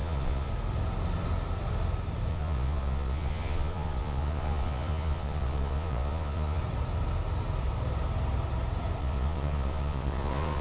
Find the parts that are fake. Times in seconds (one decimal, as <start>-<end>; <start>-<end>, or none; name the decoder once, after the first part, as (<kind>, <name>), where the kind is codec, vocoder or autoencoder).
0.0-0.5 (vocoder, Vocos); 2.3-6.6; 9.0-10.6